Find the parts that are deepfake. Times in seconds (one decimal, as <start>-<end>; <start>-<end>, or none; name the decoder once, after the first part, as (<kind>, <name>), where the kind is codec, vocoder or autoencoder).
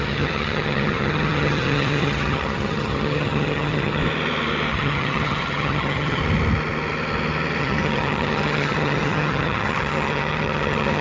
0.0-4.0 (vocoder, HiFi-GAN); 4.7-6.2; 7.6-11.0